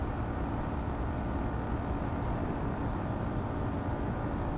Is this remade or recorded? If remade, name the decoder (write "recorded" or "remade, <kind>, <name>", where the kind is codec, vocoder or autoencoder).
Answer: recorded